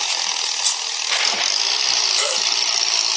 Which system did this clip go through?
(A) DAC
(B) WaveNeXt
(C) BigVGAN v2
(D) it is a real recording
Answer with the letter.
D